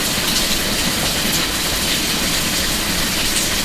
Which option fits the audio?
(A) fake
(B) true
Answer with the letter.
B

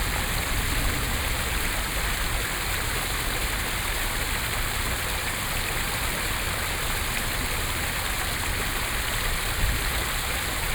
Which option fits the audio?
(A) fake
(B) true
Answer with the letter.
B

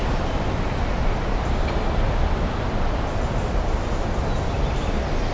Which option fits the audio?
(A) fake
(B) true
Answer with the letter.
B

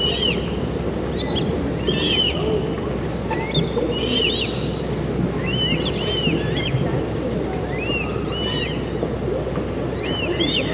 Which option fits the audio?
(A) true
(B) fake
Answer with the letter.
A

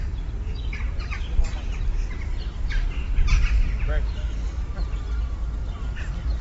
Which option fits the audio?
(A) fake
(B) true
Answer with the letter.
B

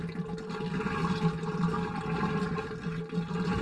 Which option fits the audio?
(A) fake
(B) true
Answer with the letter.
B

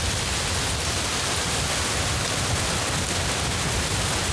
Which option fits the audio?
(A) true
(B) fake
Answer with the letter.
A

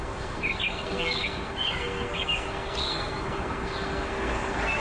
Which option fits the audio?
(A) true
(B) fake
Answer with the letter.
B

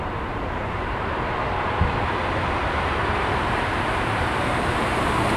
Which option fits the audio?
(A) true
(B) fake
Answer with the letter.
B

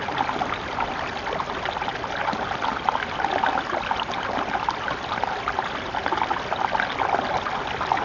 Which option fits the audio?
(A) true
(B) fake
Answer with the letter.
A